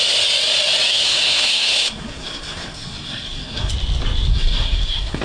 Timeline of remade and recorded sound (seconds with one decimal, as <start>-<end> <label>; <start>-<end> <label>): 0.0-0.9 recorded; 0.9-3.7 remade; 3.7-4.3 recorded; 4.3-5.2 remade